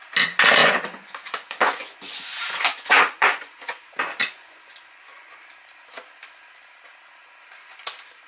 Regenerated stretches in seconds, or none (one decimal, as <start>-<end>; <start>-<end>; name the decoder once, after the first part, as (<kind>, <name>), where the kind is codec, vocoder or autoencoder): 0.6-3.8 (vocoder, Vocos); 4.2-5.3